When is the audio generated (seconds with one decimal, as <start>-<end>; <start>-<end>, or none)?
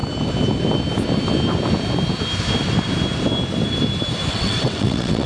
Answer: 4.3-5.3